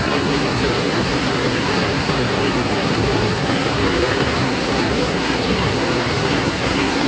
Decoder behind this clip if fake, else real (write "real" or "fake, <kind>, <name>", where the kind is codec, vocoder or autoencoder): fake, codec, SNAC